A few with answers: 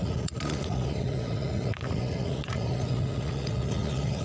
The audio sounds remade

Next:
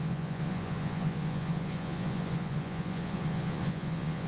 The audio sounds remade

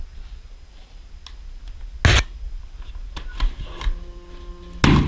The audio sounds recorded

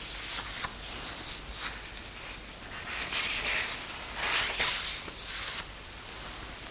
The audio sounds recorded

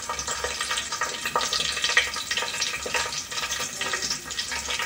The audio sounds recorded